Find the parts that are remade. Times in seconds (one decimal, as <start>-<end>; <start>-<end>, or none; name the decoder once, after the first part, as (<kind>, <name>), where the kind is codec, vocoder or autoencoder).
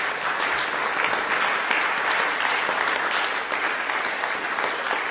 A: none